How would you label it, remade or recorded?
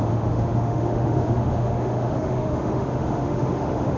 remade